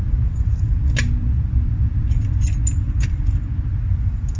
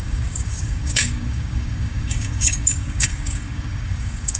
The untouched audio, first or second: first